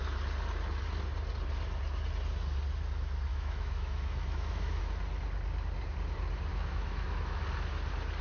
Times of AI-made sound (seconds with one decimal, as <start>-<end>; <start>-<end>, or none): 3.3-4.8; 6.5-7.4